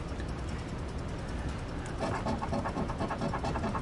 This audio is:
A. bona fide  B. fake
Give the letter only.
A